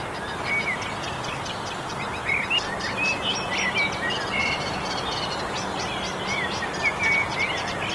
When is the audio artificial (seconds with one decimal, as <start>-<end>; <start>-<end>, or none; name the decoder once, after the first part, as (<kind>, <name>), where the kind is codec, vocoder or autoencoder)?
4.4-5.4 (vocoder, BigVGAN v2)